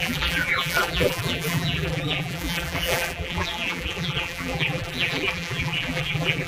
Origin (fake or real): fake